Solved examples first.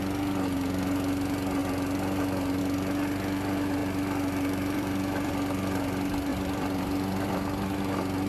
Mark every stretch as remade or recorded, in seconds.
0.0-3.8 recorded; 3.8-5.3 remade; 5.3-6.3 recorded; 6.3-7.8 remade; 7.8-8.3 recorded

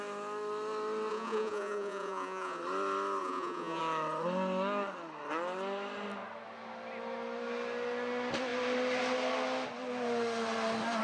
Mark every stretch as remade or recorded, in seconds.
0.0-1.1 recorded; 1.1-2.6 remade; 2.6-3.2 recorded; 3.2-3.8 remade; 3.8-11.0 recorded

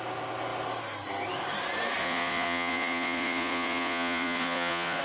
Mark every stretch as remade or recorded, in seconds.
0.0-2.0 recorded; 2.0-5.0 remade

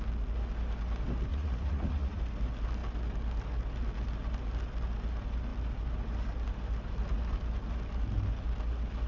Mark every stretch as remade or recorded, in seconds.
0.0-1.3 recorded; 1.3-2.2 remade; 2.2-9.1 recorded

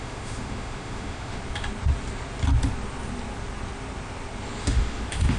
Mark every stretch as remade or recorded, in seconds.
0.0-1.4 remade; 1.4-4.6 recorded; 4.6-5.4 remade

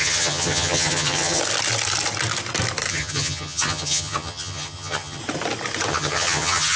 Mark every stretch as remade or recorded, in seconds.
0.0-1.4 remade; 1.4-2.9 recorded; 2.9-5.2 remade; 5.2-5.9 recorded; 5.9-6.8 remade

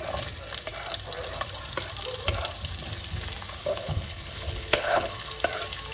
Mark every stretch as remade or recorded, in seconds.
0.0-3.6 recorded; 3.6-5.3 remade; 5.3-5.9 recorded

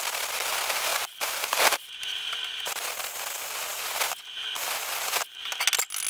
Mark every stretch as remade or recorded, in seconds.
0.0-0.9 recorded; 0.9-2.8 remade; 2.8-6.1 recorded